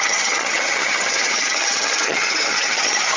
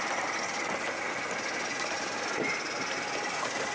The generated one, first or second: first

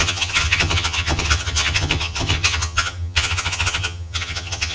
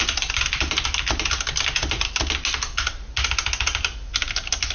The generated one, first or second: first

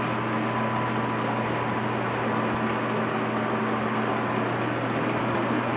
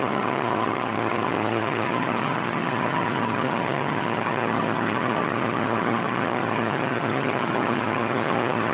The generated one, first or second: second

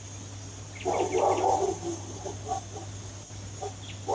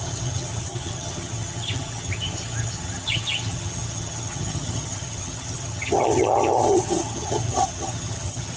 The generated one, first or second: second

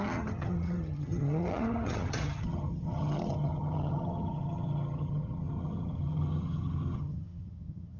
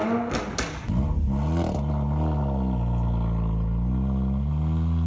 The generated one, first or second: first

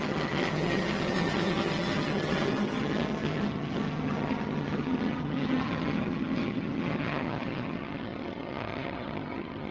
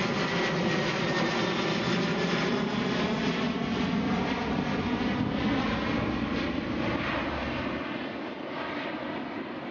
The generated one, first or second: first